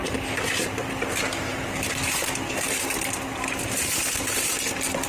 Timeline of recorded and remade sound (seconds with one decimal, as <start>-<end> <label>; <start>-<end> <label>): 0.0-1.1 remade; 1.1-1.5 recorded; 1.5-3.8 remade; 3.8-5.1 recorded